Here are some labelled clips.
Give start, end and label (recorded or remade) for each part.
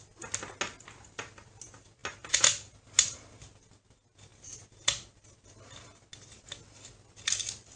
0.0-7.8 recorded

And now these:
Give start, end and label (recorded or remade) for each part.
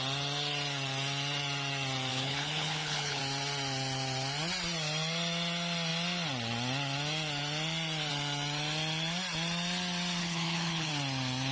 0.0-2.1 recorded; 2.1-3.2 remade; 3.2-10.2 recorded; 10.2-10.9 remade; 10.9-11.5 recorded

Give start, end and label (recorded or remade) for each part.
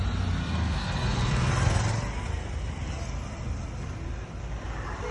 0.0-0.4 recorded; 0.4-1.5 remade; 1.5-5.1 recorded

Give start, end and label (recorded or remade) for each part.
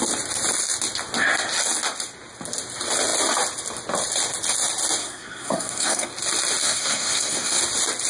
0.0-5.0 recorded; 5.0-6.1 remade; 6.1-6.6 recorded; 6.6-7.6 remade; 7.6-8.1 recorded